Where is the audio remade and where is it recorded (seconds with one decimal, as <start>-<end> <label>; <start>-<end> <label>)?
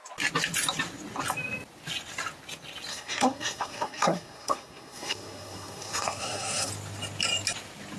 0.0-2.9 recorded; 2.9-6.7 remade; 6.7-8.0 recorded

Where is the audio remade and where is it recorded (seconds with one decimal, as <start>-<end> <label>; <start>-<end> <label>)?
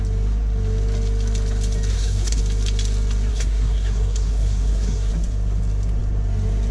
0.0-1.9 recorded; 1.9-2.4 remade; 2.4-3.3 recorded; 3.3-5.1 remade; 5.1-6.7 recorded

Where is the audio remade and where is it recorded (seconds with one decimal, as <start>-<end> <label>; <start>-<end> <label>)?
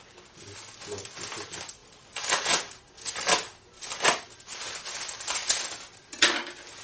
0.0-6.8 recorded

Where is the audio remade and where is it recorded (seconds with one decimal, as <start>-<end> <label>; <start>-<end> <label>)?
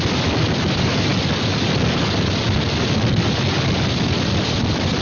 0.0-5.0 recorded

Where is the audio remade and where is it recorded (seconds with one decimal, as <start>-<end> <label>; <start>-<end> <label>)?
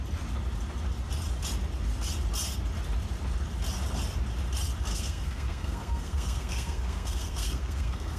0.0-4.9 recorded; 4.9-8.2 remade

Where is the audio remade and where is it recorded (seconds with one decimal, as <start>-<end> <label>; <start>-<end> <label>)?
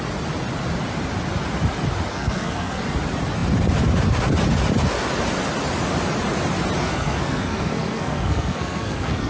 0.0-2.1 recorded; 2.1-2.8 remade; 2.8-6.8 recorded; 6.8-9.3 remade